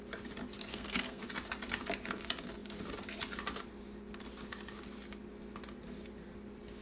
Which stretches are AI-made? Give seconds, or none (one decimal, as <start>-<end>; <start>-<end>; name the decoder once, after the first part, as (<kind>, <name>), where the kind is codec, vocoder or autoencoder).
0.7-1.2 (codec, SNAC)